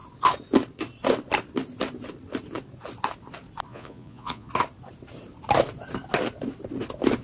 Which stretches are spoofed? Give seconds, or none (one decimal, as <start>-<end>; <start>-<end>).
3.7-4.5